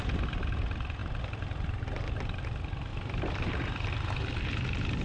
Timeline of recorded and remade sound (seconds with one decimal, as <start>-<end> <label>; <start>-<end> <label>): 0.0-5.0 recorded